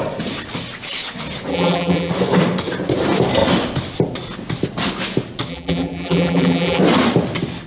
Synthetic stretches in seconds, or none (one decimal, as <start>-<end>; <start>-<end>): 1.5-2.1; 5.5-6.8